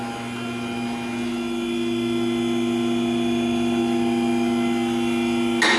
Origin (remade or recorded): recorded